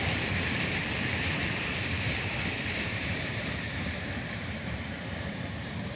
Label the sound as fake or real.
fake